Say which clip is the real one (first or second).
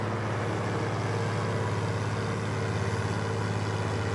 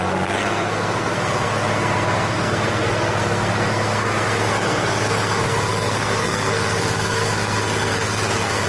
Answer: first